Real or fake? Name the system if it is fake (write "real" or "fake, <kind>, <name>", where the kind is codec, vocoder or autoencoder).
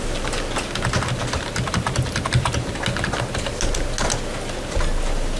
real